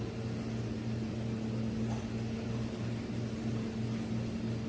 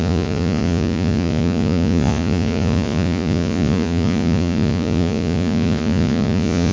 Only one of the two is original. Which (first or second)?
first